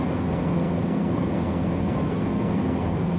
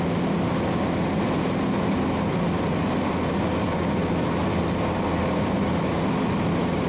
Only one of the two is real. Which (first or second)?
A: second